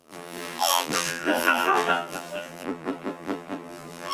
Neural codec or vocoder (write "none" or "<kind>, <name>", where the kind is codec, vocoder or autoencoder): vocoder, BigVGAN v2